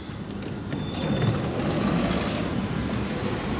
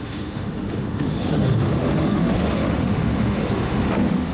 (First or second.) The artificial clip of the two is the second